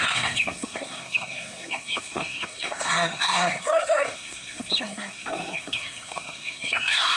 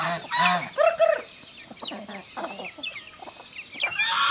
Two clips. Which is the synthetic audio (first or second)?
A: first